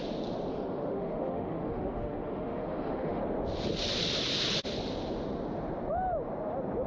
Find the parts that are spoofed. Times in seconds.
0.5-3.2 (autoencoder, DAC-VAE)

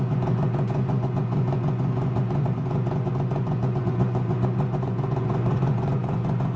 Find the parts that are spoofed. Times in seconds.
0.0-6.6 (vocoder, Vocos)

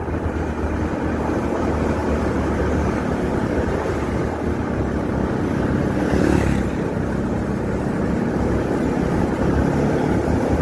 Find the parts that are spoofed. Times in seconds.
none

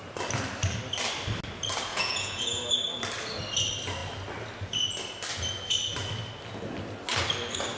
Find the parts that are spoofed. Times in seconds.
1.9-2.7 (vocoder, Vocos)

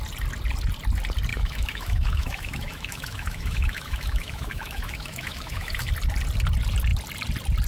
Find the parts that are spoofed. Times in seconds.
1.3-5.9 (autoencoder, DAC-VAE)

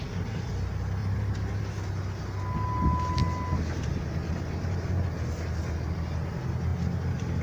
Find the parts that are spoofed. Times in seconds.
1.0-1.8 (vocoder, BigVGAN v2)

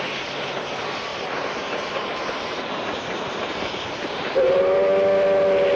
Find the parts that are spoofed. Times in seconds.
1.1-4.6 (vocoder, BigVGAN v2)